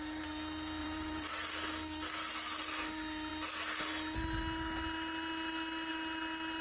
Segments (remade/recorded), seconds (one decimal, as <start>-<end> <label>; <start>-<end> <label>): 0.0-0.8 recorded; 0.8-1.3 remade; 1.3-6.6 recorded